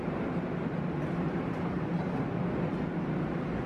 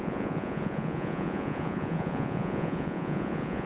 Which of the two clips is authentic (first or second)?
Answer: first